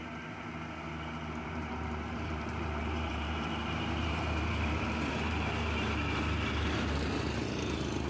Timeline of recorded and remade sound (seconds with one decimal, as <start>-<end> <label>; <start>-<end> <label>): 0.0-1.4 recorded; 1.4-5.1 remade; 5.1-8.1 recorded